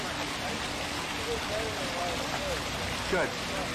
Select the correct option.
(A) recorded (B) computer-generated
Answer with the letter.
A